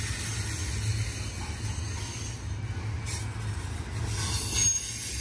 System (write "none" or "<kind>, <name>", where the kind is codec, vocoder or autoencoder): none